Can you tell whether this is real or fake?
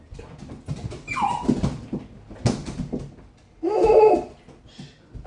real